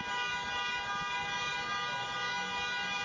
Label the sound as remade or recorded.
recorded